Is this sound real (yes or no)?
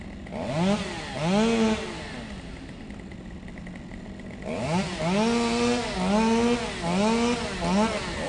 yes